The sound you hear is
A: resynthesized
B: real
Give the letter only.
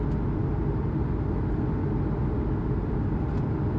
B